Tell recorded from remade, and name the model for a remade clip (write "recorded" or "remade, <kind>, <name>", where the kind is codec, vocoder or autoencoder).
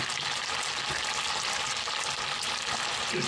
recorded